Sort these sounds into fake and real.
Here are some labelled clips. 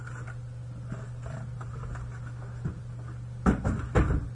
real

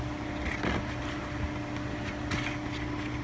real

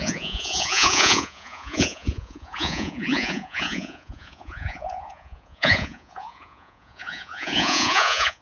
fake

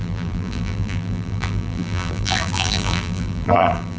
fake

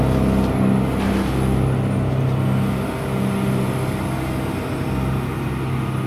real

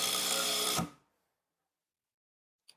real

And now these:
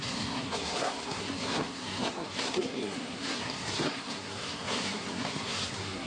fake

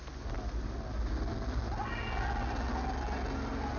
real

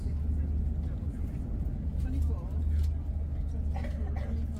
real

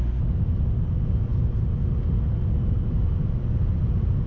real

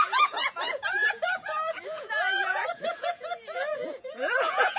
fake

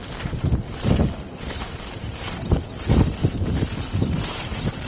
real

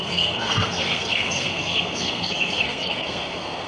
fake